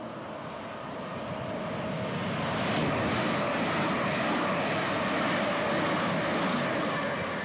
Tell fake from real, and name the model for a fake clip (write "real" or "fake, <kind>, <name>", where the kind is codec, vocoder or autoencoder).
real